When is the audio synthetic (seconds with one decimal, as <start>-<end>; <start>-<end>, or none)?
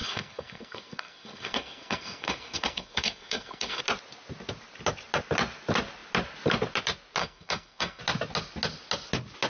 0.0-3.8; 7.2-8.0